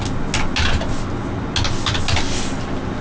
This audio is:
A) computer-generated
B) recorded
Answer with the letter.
B